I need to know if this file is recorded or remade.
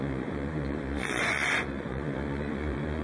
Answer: remade